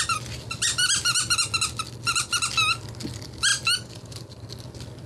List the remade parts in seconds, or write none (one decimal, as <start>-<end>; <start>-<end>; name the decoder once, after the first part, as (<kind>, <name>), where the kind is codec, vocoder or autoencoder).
none

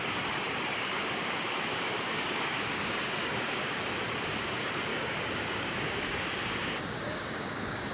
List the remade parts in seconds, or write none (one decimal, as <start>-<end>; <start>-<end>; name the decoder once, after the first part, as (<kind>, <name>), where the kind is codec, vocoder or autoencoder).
0.7-3.8 (codec, DAC); 4.9-7.9

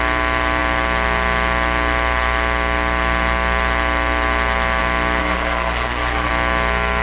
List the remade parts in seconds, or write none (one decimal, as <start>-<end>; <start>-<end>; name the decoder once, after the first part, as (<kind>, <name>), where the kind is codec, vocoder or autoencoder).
5.2-6.3 (codec, SNAC)